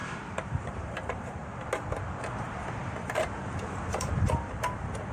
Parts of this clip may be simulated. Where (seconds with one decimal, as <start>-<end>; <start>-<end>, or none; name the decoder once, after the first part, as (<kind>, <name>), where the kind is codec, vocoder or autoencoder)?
0.0-1.4 (vocoder, BigVGAN v2); 2.2-5.1